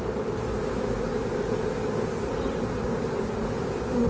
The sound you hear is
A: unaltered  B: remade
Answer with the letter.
A